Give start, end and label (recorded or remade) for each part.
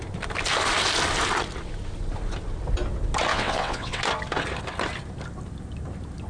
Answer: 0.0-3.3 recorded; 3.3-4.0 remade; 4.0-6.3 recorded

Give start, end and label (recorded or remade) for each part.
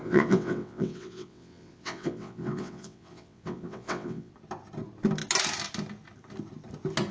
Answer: 0.0-4.3 remade; 4.3-7.1 recorded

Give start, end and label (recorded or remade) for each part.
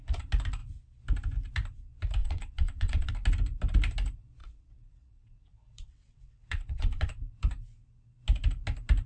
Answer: 0.0-2.2 recorded; 2.2-3.1 remade; 3.1-4.4 recorded; 4.4-7.2 remade; 7.2-9.1 recorded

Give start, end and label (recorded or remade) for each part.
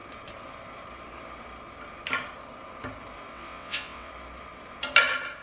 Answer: 0.0-3.3 recorded; 3.3-4.1 remade; 4.1-5.4 recorded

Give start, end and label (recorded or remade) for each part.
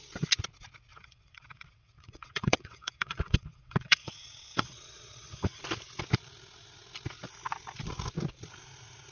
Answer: 0.0-0.9 recorded; 0.9-5.6 remade; 5.6-9.1 recorded